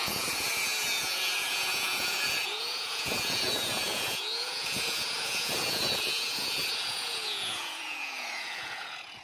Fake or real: fake